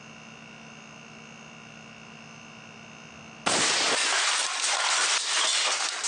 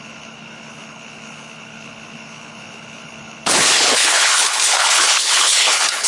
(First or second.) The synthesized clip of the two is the second